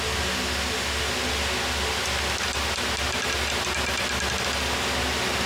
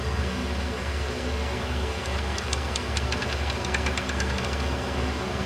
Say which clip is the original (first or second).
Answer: first